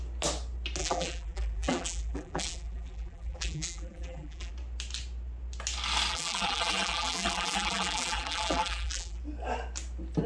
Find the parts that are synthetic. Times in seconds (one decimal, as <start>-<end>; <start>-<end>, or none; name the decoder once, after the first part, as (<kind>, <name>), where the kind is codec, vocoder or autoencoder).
0.8-4.5 (vocoder, BigVGAN v2); 6.1-9.2